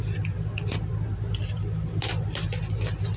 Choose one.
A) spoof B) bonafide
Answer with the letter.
B